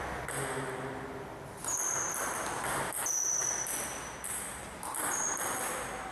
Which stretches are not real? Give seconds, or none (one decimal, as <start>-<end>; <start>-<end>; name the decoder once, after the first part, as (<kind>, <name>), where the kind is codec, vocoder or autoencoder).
none

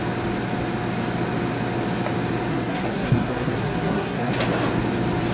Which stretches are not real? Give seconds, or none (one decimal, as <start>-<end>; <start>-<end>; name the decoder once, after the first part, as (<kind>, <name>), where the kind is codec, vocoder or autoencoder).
2.5-4.3 (codec, SNAC)

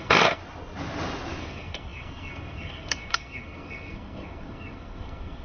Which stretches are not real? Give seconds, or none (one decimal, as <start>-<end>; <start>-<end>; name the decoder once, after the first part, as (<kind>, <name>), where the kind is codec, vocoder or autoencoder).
0.0-0.4 (codec, SNAC); 1.4-5.4

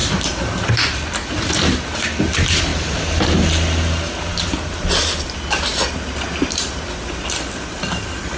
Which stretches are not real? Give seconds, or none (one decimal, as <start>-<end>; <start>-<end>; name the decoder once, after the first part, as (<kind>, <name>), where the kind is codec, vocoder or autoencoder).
none

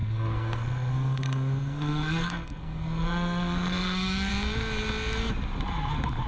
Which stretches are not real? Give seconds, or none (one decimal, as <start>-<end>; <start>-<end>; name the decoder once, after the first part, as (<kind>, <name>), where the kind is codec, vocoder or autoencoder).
0.0-4.3 (codec, SNAC)

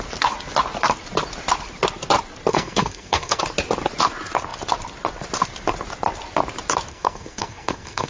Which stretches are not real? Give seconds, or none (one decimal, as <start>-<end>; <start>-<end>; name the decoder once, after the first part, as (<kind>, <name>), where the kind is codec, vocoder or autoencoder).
2.5-3.4 (codec, SNAC); 6.9-8.1

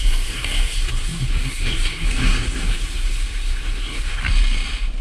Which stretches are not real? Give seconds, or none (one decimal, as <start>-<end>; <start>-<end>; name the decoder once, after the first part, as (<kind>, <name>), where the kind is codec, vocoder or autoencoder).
0.0-4.2 (codec, SNAC)